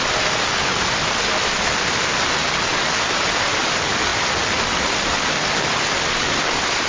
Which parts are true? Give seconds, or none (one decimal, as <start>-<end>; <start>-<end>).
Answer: 0.0-6.9

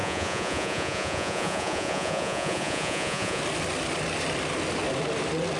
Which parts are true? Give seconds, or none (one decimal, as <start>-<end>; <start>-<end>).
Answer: 3.4-5.6